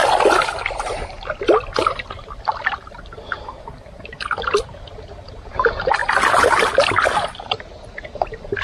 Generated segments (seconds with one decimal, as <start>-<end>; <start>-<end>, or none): 0.0-0.5